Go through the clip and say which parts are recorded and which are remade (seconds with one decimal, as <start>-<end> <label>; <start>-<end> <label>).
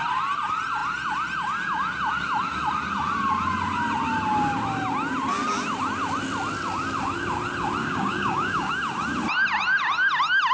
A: 0.0-7.8 recorded; 7.8-8.7 remade; 8.7-10.5 recorded